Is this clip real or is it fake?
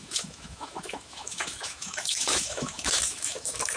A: fake